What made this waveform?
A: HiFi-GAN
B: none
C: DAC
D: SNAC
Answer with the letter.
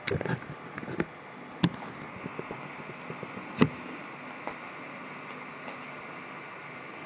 B